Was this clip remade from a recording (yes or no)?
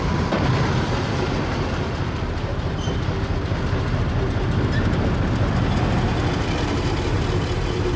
no